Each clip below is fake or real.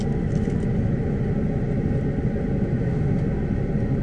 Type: real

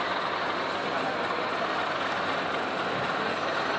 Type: real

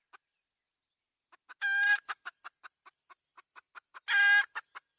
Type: real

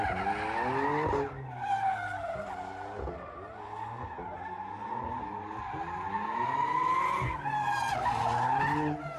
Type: real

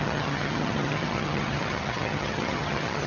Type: fake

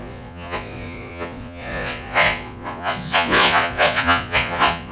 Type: fake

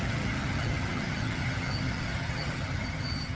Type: fake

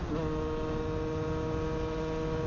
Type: real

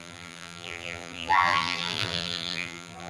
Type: fake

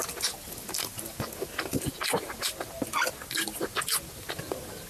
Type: real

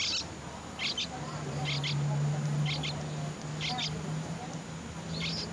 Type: real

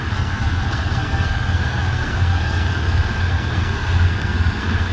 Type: fake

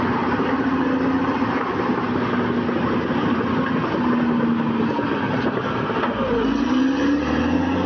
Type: real